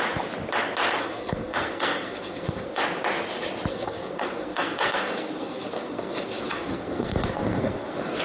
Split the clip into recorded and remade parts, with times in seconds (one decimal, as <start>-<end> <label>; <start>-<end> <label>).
0.0-1.0 recorded; 1.0-2.8 remade; 2.8-3.7 recorded; 3.7-8.2 remade